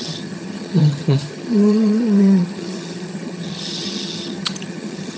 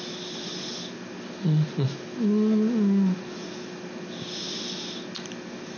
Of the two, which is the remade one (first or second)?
first